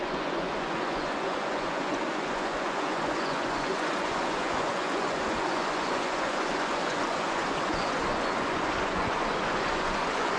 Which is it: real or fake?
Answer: fake